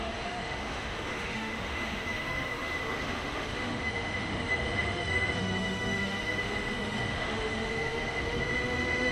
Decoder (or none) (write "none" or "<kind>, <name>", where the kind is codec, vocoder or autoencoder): autoencoder, DAC-VAE